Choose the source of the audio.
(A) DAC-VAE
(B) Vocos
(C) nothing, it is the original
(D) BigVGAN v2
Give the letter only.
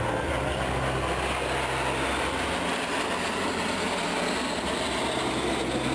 C